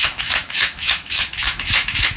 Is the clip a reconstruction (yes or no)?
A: yes